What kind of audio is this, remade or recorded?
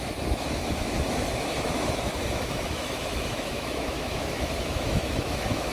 remade